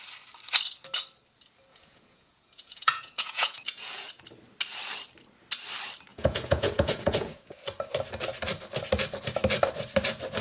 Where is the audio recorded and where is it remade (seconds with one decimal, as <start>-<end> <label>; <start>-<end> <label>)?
0.0-1.7 recorded; 1.7-4.2 remade; 4.2-6.1 recorded; 6.1-7.6 remade; 7.6-10.4 recorded